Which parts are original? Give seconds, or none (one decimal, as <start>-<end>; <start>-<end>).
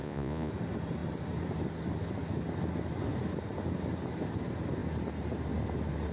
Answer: 0.5-6.1